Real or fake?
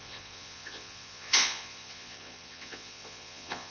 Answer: fake